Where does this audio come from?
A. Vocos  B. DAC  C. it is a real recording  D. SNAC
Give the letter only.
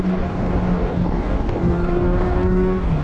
B